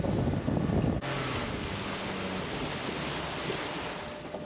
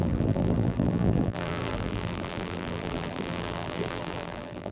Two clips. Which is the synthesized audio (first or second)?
second